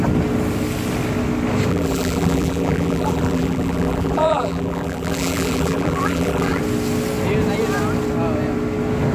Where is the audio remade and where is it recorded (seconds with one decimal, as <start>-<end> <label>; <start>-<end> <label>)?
0.0-1.7 recorded; 1.7-6.6 remade; 6.6-9.1 recorded